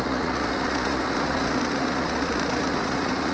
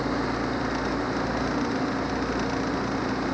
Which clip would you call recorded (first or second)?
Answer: second